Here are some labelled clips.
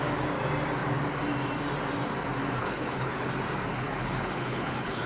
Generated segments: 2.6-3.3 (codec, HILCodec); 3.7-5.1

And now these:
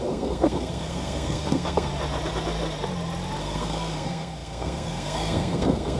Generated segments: 0.0-1.9 (codec, SNAC); 3.4-6.0

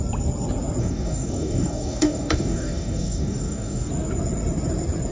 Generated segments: 0.8-3.9 (codec, DAC)

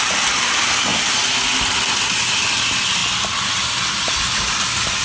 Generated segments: none

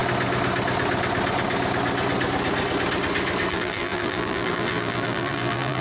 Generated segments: 3.5-5.8 (vocoder, BigVGAN v2)

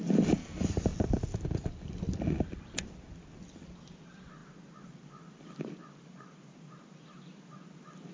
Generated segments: 4.4-8.1 (vocoder, BigVGAN v2)